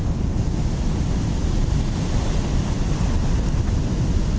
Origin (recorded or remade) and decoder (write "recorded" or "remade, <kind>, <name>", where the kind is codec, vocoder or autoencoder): recorded